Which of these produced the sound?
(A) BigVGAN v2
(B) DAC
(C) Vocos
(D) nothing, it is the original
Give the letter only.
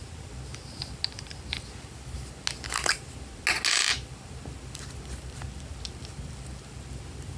D